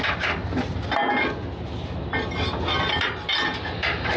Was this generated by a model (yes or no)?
no